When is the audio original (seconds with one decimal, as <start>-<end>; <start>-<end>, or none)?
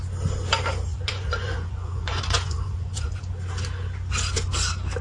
0.0-0.9; 3.2-5.0